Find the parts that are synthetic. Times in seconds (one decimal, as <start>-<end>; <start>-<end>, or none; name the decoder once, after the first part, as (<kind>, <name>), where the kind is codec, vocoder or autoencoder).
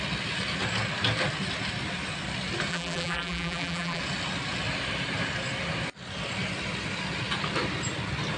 2.7-4.0 (vocoder, BigVGAN v2)